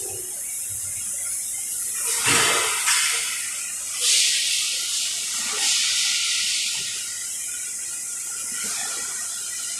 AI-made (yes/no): no